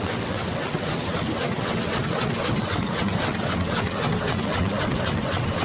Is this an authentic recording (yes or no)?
no